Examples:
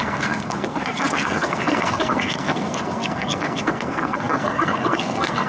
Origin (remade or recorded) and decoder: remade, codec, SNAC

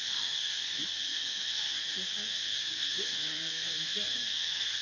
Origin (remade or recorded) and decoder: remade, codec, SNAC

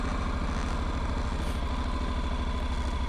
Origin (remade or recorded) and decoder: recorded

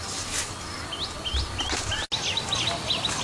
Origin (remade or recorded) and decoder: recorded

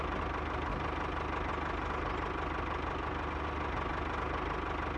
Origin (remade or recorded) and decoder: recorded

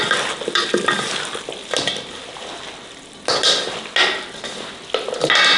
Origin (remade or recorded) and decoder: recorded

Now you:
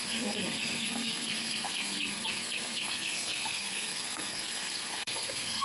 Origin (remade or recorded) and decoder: remade, codec, SNAC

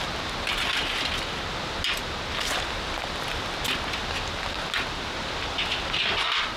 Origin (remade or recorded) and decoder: recorded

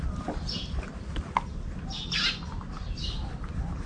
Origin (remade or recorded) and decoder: recorded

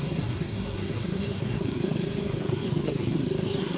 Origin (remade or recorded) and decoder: remade, codec, SNAC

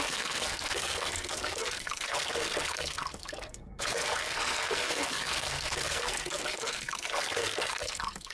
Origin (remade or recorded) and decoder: remade, codec, SNAC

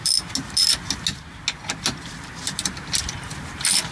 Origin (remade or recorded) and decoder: recorded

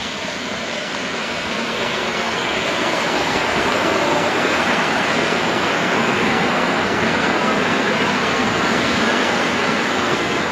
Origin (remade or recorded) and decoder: remade, codec, SNAC